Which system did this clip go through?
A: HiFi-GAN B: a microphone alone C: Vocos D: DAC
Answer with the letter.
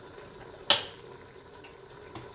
B